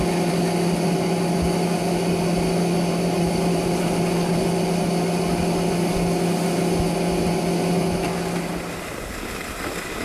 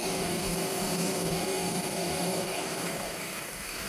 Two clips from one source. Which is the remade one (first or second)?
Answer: second